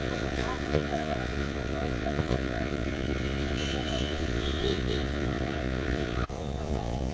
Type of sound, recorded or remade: remade